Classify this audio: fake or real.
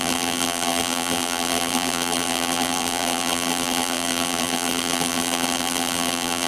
fake